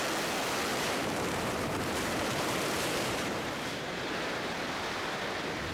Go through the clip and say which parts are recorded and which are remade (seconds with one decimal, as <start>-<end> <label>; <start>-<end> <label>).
0.0-0.7 recorded; 0.7-4.1 remade; 4.1-5.7 recorded